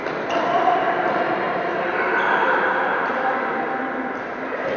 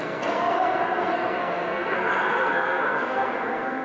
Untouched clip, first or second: first